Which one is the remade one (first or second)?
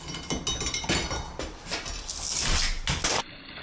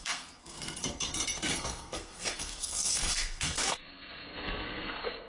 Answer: second